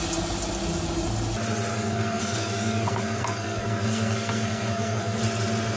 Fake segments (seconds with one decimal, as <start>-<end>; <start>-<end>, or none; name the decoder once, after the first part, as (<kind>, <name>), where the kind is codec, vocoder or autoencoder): 1.7-5.2 (codec, SNAC)